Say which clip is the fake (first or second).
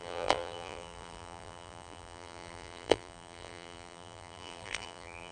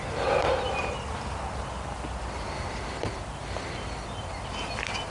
first